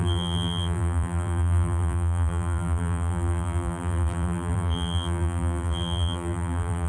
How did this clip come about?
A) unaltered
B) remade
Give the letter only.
B